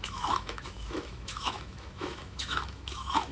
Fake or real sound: fake